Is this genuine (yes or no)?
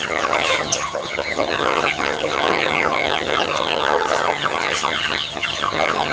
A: no